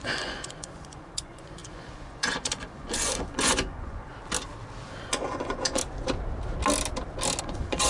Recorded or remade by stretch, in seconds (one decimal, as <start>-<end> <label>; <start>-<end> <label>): 0.0-4.1 remade; 4.1-5.0 recorded; 5.0-5.8 remade; 5.8-7.4 recorded; 7.4-7.9 remade